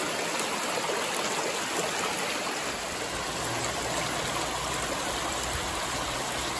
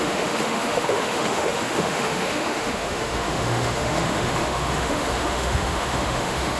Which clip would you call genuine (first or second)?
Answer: first